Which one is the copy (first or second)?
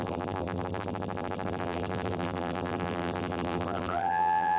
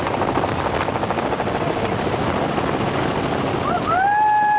first